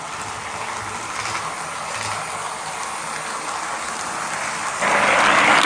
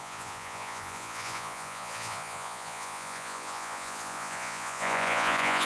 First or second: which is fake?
second